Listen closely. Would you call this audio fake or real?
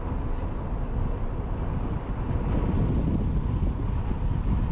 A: real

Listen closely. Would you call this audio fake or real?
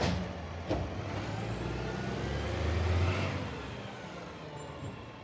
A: real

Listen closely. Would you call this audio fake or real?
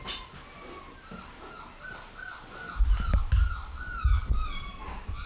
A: real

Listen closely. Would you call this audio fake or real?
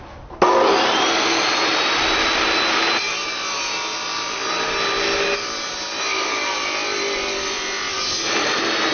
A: real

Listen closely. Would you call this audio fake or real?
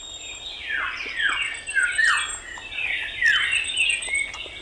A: real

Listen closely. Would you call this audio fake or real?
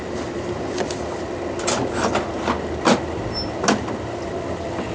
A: real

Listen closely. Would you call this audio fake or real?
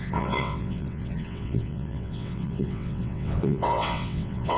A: fake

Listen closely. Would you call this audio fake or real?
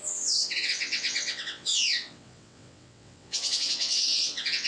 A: fake